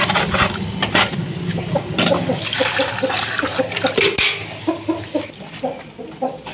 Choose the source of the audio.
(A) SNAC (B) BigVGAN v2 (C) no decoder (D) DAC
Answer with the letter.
C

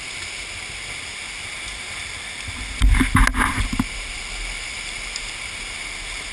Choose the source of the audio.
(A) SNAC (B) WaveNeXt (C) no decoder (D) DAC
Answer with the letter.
C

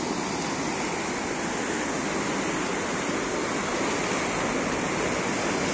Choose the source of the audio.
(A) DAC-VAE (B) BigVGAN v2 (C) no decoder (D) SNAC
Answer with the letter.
C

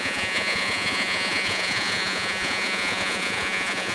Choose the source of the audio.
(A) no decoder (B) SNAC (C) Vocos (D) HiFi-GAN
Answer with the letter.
C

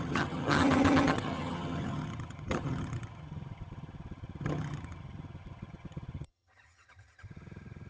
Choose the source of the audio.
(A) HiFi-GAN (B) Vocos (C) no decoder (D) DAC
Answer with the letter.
A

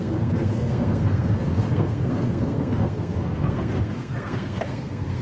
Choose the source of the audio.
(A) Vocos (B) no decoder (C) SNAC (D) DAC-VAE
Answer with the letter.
C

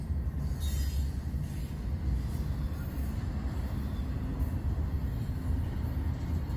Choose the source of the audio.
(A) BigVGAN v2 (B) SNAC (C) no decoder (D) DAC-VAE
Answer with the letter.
C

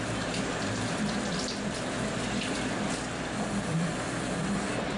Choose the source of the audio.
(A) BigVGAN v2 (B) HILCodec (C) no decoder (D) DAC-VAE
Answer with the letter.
A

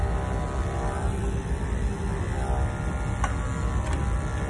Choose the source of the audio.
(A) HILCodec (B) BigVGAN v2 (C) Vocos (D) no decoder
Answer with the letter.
D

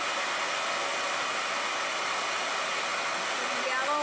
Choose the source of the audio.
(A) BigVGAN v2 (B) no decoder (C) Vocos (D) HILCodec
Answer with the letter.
B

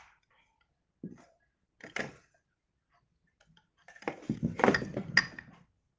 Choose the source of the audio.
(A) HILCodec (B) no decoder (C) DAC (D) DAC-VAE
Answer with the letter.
B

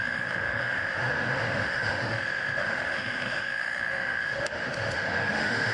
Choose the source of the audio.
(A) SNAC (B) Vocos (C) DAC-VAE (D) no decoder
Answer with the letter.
C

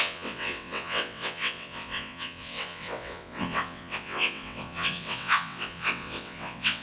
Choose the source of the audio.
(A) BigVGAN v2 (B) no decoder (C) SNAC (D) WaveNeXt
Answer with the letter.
D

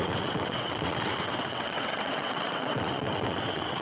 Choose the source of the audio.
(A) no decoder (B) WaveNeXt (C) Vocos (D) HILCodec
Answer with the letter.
B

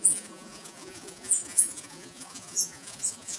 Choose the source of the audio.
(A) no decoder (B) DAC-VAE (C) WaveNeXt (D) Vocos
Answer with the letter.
D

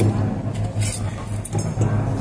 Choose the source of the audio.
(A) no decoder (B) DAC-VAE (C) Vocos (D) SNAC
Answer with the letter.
A